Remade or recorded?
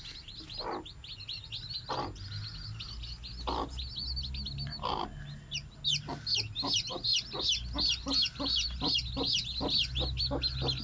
recorded